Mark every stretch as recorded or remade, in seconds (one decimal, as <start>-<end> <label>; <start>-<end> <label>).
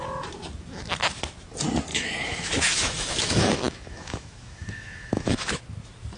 0.0-1.9 recorded; 1.9-5.6 remade; 5.6-6.2 recorded